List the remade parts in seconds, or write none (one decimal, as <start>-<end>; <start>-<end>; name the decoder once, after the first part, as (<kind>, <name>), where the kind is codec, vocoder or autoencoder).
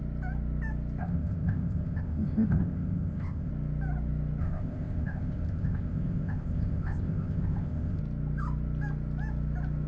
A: 1.0-3.5 (codec, ZipCodec); 4.4-8.0